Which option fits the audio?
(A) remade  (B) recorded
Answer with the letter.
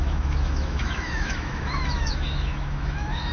A